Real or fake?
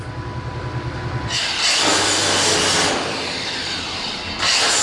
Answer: real